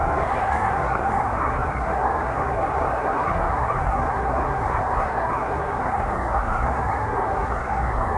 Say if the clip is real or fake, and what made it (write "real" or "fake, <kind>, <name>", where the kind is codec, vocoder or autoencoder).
fake, codec, SNAC